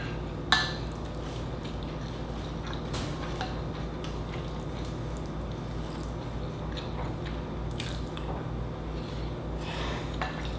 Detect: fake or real real